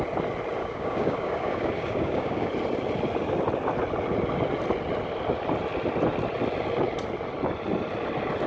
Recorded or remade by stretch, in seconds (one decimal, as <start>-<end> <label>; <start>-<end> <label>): 0.0-0.6 recorded; 0.6-2.5 remade; 2.5-8.5 recorded